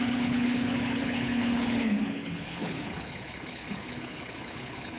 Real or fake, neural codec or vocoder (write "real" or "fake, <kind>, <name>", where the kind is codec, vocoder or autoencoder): fake, codec, HILCodec